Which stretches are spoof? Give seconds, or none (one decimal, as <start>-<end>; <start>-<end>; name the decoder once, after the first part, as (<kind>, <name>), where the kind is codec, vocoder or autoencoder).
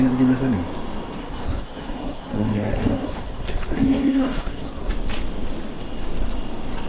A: 1.2-4.9 (codec, SNAC)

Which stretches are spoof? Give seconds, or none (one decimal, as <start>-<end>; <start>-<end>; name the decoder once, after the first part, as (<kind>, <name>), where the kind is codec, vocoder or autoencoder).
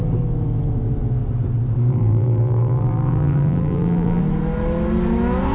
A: 1.9-4.2 (vocoder, BigVGAN v2)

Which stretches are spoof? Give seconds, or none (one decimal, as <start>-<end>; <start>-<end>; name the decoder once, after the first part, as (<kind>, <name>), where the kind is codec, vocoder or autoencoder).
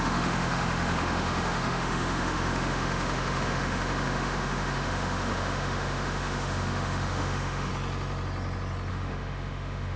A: 0.0-7.7 (autoencoder, DAC-VAE); 8.9-10.0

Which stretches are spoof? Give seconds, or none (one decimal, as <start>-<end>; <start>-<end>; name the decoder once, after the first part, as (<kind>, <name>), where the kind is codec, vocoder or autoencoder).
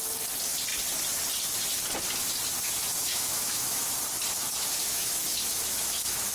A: 3.1-4.0 (autoencoder, DAC-VAE); 4.8-6.3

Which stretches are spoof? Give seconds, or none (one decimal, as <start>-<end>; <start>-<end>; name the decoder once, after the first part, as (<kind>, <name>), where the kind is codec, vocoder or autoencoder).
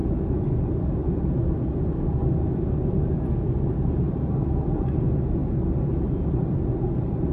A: 0.0-0.5 (vocoder, Vocos)